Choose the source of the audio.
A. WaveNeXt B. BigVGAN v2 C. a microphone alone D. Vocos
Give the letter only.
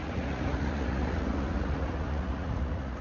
D